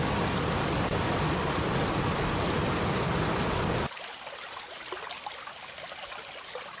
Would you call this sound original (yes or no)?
yes